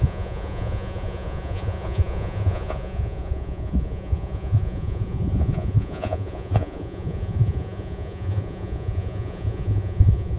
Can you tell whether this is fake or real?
fake